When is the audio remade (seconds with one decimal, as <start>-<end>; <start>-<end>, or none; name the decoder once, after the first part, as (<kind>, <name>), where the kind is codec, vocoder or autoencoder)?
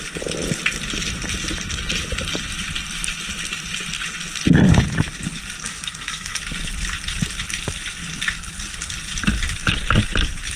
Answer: 5.6-6.4 (codec, SNAC)